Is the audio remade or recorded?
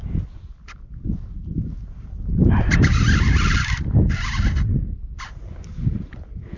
recorded